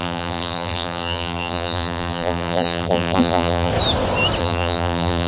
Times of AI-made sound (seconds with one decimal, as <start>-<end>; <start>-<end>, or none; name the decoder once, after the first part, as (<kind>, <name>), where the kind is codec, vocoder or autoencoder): 0.0-3.7 (vocoder, BigVGAN v2); 4.4-5.3